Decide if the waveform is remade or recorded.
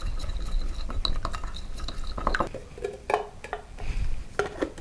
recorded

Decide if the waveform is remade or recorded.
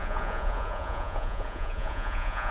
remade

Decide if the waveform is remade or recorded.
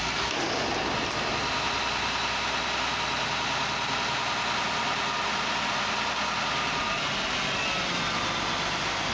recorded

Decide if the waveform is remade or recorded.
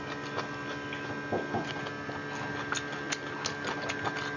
recorded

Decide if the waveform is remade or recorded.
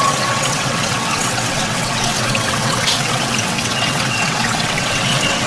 remade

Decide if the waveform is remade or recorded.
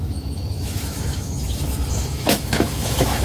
remade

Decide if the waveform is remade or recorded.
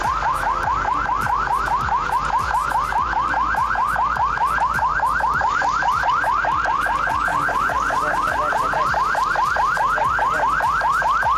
recorded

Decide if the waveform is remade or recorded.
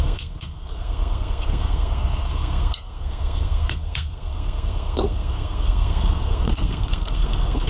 remade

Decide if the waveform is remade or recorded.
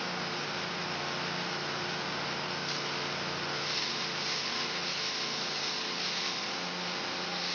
recorded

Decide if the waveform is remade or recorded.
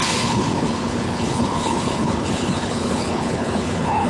remade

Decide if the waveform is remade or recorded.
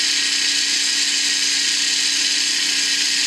recorded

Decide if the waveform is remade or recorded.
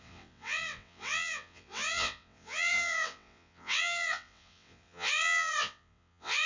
remade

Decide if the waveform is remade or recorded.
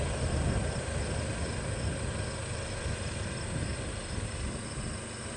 recorded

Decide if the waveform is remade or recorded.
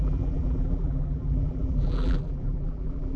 remade